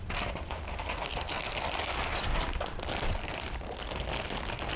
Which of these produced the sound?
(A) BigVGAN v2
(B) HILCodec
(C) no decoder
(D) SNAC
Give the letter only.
C